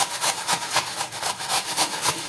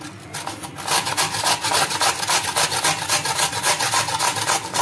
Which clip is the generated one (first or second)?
first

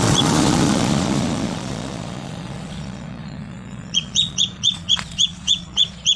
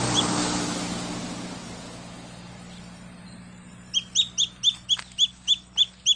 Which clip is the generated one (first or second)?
first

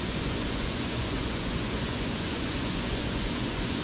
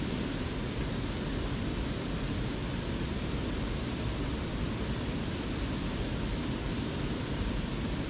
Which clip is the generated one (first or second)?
first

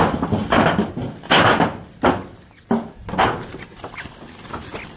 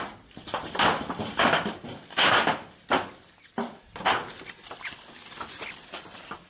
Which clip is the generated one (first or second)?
second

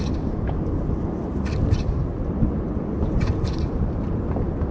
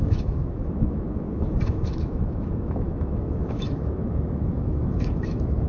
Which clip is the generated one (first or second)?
second